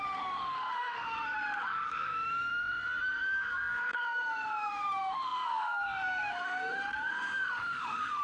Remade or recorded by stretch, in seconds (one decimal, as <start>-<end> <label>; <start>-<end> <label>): 0.0-8.2 remade